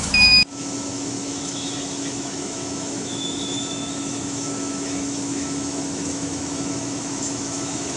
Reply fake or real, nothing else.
fake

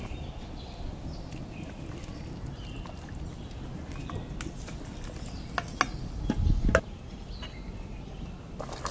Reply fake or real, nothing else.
real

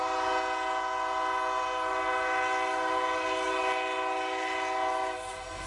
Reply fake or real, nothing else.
real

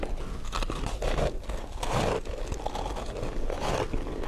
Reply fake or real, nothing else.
real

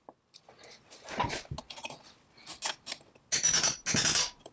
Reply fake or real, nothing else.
real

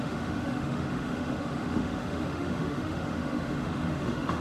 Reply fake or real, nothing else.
fake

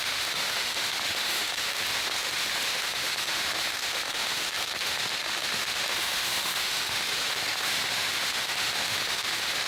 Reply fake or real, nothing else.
fake